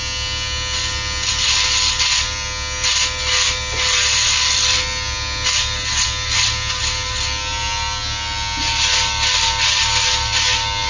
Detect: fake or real real